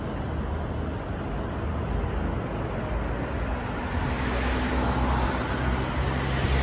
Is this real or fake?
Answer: real